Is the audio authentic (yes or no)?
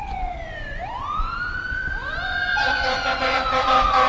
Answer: no